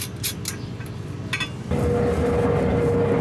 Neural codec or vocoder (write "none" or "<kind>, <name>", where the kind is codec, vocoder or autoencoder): none